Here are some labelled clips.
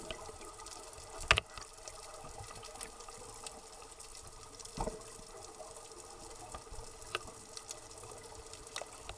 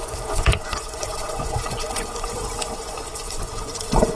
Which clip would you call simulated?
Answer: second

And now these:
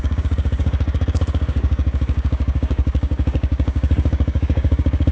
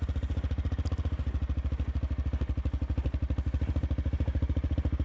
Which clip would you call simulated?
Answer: first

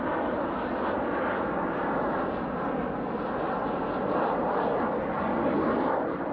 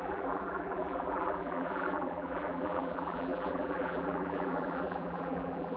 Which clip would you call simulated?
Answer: second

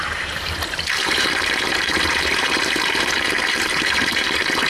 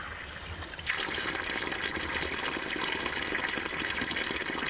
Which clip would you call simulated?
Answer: first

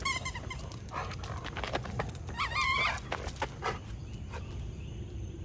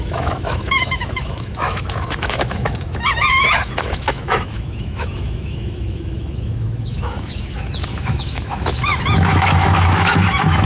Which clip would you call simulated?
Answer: second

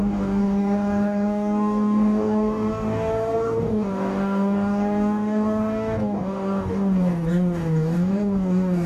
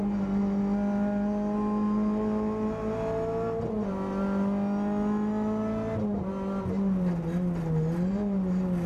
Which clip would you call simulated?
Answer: first